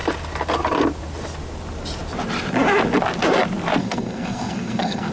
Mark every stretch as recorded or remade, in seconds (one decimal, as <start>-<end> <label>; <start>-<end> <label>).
0.0-3.8 recorded; 3.8-5.1 remade